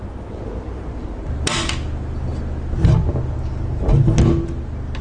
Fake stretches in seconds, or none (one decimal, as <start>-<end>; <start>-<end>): none